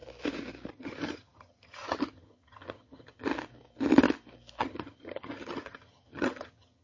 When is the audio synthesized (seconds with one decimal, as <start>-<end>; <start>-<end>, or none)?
0.7-3.3; 4.6-6.8